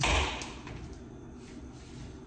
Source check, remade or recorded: recorded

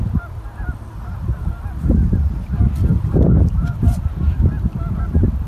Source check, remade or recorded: recorded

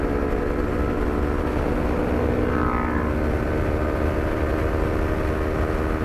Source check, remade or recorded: recorded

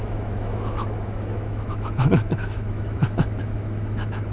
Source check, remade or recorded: remade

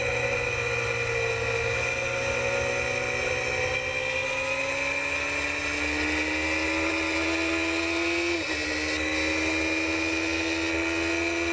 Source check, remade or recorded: recorded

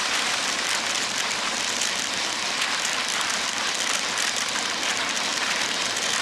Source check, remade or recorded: recorded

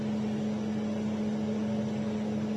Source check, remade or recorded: recorded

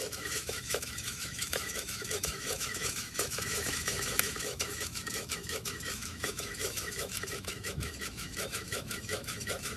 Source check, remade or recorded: remade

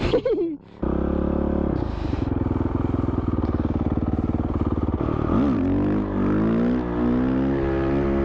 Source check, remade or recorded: recorded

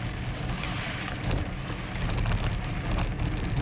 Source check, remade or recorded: recorded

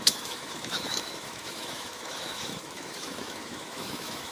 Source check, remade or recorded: remade